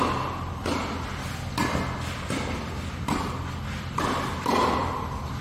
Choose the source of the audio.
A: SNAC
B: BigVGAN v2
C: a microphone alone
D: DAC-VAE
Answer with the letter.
C